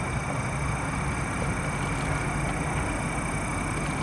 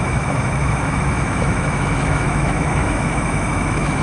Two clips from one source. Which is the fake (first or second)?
second